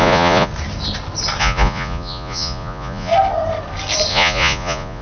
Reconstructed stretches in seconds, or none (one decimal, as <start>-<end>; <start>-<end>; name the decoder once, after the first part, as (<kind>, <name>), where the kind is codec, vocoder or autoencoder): 0.0-0.5 (vocoder, Vocos); 1.4-3.1; 4.1-5.0